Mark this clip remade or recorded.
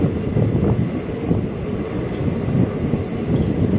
recorded